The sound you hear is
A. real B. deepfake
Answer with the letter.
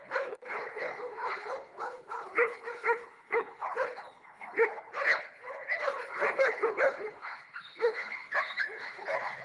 B